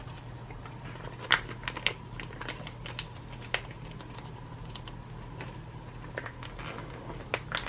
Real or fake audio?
real